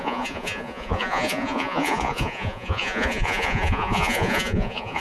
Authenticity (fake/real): fake